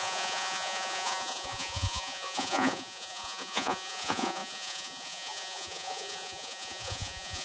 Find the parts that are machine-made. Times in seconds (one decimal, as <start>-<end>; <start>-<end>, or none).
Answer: 0.0-7.4